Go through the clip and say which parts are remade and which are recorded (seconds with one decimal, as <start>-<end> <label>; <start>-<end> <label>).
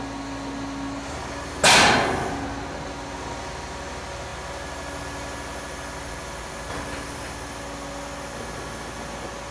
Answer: 0.0-9.5 recorded